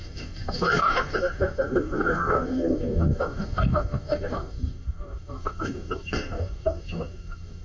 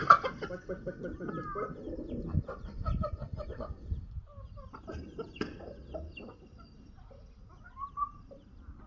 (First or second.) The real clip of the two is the second